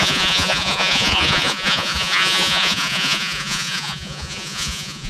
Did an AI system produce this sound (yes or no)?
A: yes